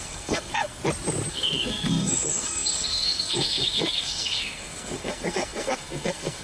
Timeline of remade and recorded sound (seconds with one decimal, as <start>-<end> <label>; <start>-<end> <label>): 0.0-0.8 remade; 0.8-1.3 recorded; 1.3-6.4 remade